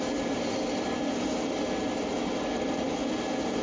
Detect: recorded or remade recorded